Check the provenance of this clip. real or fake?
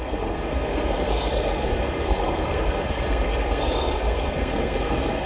fake